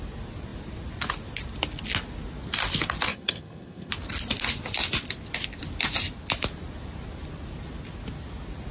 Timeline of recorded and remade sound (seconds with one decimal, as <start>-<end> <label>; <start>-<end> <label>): 0.0-3.1 recorded; 3.1-3.9 remade; 3.9-8.7 recorded